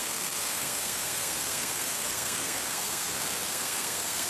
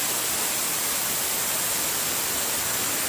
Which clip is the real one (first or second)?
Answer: second